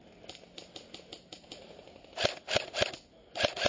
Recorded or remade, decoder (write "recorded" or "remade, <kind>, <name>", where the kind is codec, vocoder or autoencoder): recorded